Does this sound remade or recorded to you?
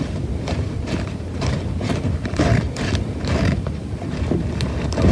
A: remade